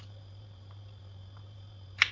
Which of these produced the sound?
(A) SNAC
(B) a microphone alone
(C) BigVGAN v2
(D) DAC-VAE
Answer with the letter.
C